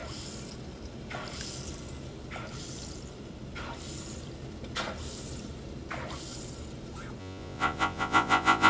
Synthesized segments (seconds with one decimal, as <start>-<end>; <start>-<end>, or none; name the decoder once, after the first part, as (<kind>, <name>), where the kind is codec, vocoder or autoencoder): 7.2-8.7 (vocoder, Vocos)